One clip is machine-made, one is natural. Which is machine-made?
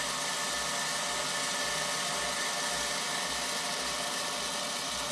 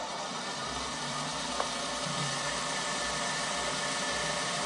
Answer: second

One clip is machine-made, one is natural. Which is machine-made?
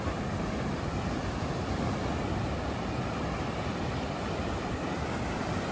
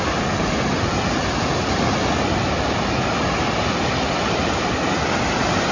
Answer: first